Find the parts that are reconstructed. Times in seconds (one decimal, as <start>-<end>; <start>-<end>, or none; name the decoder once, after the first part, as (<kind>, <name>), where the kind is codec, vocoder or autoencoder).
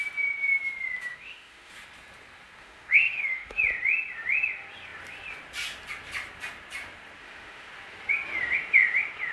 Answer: 1.1-1.7 (autoencoder, DAC-VAE); 2.6-3.6; 7.2-7.7